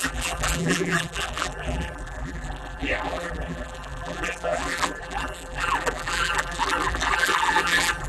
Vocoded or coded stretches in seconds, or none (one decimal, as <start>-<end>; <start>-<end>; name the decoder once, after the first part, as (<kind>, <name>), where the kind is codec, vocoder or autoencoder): 0.0-8.1 (vocoder, BigVGAN v2)